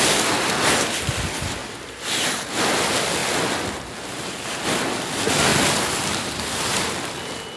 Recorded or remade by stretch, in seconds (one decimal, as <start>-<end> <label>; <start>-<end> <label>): 0.0-3.2 remade; 3.2-4.7 recorded; 4.7-5.5 remade; 5.5-6.2 recorded; 6.2-7.6 remade